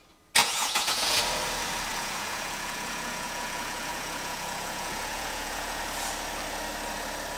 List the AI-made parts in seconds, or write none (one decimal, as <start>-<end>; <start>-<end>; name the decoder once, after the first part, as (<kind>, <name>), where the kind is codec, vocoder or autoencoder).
0.4-1.2 (vocoder, Vocos); 1.9-5.8